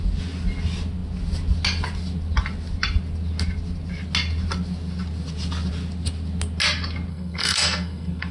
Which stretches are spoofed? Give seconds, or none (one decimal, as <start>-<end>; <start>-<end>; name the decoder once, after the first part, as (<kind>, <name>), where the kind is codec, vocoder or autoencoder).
7.1-8.3 (codec, SNAC)